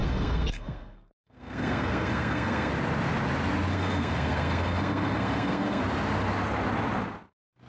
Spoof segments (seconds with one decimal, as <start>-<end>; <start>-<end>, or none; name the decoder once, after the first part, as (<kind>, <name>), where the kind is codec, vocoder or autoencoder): 0.0-2.7 (codec, SNAC); 3.7-5.8

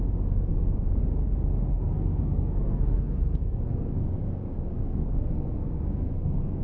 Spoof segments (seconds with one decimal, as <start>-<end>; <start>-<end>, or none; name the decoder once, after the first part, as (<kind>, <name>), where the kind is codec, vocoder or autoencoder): 1.7-4.0 (codec, SNAC); 4.7-6.6

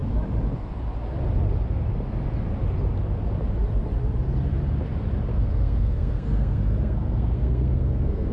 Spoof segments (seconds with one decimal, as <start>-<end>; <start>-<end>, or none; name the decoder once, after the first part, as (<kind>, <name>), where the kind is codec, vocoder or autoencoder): 5.3-8.3 (codec, SNAC)

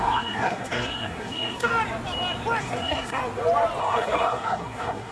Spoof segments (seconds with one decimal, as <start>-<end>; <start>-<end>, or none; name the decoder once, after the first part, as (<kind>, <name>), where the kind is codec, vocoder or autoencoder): 0.0-1.7 (codec, SNAC); 2.6-3.2; 3.8-5.1